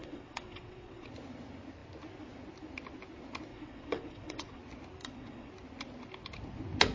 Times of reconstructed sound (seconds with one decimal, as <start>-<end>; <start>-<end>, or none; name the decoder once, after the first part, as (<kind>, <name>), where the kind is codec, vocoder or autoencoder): 0.0-1.1 (vocoder, WaveNeXt); 3.5-4.6; 5.0-5.5